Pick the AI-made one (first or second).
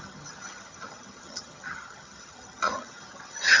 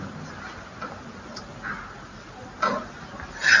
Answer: first